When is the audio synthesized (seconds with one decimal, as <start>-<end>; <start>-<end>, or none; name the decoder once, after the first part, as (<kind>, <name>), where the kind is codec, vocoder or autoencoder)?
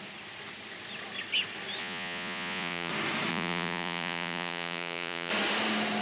1.8-2.9 (vocoder, Vocos); 3.3-5.3